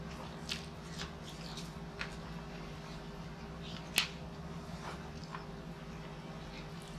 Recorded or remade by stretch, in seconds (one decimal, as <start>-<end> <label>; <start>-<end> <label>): 0.0-7.0 recorded